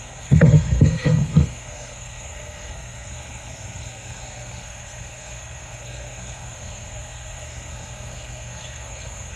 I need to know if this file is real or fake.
fake